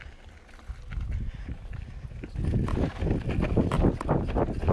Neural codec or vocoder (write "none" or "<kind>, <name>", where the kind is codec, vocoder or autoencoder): none